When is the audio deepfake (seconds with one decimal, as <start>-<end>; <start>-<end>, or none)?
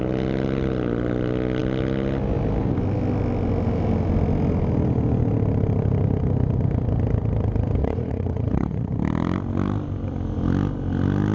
7.8-8.9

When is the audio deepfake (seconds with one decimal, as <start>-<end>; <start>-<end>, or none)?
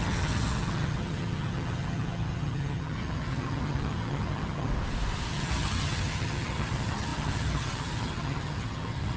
0.0-4.7; 5.3-9.2